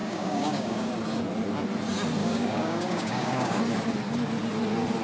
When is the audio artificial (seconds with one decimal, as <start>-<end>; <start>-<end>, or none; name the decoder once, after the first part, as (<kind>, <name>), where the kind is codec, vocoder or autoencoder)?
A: 0.0-0.9 (codec, DAC); 2.2-3.6